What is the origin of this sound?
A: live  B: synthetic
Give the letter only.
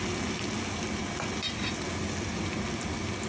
A